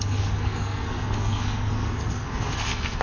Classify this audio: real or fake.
fake